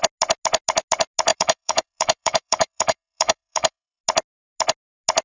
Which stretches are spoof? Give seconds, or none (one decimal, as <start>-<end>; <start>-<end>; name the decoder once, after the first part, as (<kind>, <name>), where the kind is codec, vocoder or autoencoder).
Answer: 1.3-4.0 (autoencoder, DAC-VAE)